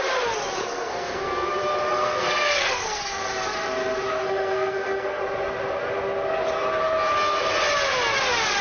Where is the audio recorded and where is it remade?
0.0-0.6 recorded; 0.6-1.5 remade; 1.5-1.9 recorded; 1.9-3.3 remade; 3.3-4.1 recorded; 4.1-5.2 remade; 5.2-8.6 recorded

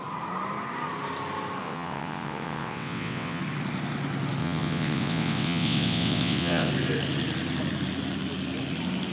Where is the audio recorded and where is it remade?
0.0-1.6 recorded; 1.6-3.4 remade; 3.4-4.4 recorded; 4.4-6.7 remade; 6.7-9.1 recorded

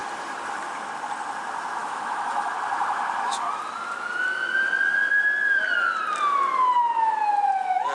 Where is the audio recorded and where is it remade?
0.0-1.8 recorded; 1.8-2.5 remade; 2.5-7.9 recorded

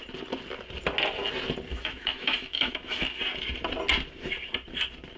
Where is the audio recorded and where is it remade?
0.0-1.7 recorded; 1.7-3.2 remade; 3.2-5.2 recorded

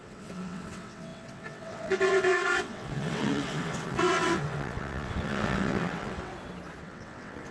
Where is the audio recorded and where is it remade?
0.0-6.3 remade; 6.3-6.8 recorded; 6.8-7.5 remade

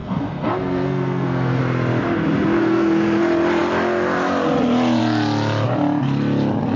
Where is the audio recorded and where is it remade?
0.0-1.6 remade; 1.6-2.6 recorded; 2.6-3.2 remade; 3.2-6.8 recorded